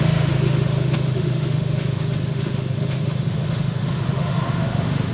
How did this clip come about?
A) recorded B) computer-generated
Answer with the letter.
B